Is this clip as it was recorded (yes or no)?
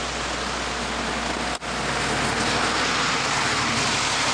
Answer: yes